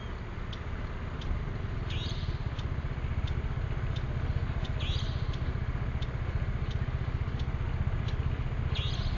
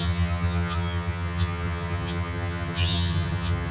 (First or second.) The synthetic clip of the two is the second